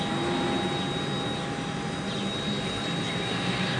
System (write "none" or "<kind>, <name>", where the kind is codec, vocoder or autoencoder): none